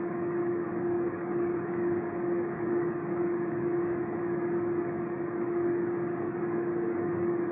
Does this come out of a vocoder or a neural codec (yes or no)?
yes